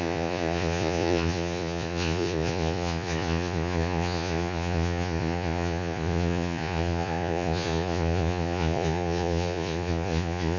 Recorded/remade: remade